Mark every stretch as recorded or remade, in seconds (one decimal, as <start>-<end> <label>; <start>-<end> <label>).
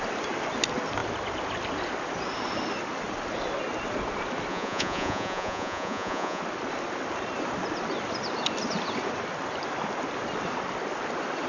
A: 0.0-4.5 recorded; 4.5-6.4 remade; 6.4-11.5 recorded